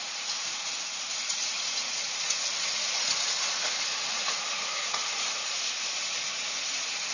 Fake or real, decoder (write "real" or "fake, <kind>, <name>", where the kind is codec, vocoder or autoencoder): fake, vocoder, Vocos